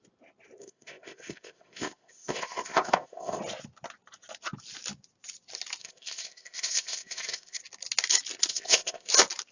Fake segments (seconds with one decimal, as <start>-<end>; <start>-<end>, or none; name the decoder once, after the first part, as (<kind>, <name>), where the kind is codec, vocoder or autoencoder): 0.6-3.4 (codec, ZipCodec); 5.8-7.6; 8.5-9.1